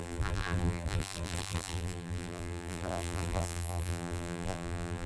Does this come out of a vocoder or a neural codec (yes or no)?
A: yes